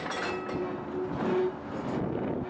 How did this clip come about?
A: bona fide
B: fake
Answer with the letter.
A